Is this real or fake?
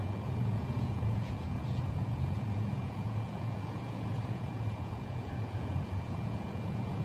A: fake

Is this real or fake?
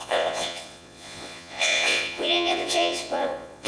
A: fake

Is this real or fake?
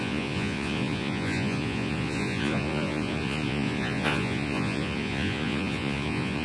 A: fake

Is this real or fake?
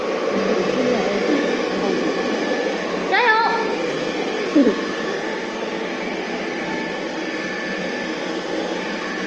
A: real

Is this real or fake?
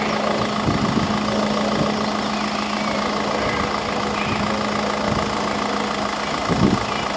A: real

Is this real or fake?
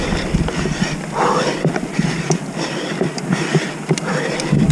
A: real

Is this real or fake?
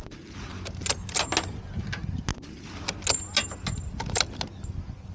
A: real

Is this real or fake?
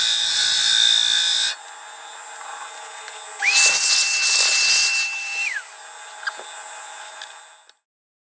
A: real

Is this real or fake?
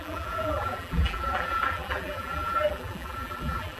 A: fake